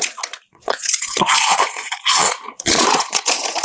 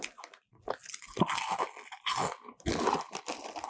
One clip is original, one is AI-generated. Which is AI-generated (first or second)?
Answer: first